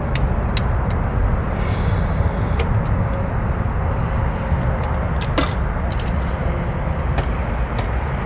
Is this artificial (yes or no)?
no